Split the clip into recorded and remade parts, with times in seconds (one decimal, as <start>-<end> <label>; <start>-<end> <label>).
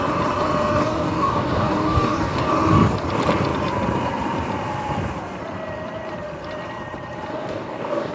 0.0-0.8 recorded; 0.8-2.5 remade; 2.5-7.3 recorded; 7.3-8.1 remade